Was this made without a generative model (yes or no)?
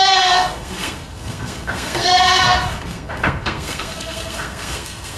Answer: no